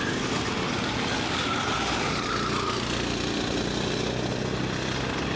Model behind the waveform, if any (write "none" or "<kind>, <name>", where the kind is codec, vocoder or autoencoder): none